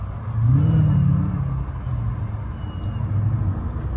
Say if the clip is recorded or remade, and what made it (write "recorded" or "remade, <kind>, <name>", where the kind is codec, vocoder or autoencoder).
recorded